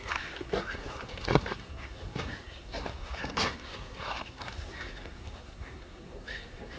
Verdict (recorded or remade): remade